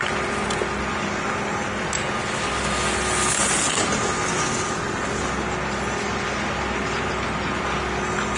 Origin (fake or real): real